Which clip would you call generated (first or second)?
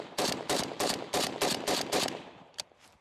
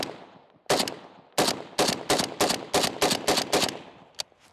first